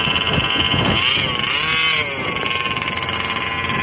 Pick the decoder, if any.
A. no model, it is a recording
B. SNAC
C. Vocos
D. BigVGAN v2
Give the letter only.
A